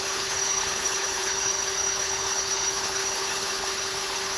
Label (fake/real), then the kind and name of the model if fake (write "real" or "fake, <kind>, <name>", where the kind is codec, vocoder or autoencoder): fake, codec, HILCodec